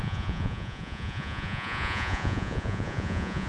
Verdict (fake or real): fake